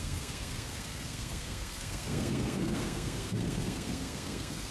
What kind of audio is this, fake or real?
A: fake